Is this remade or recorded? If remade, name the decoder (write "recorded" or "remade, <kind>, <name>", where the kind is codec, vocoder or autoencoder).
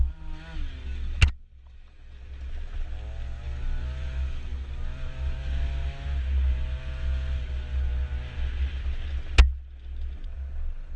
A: recorded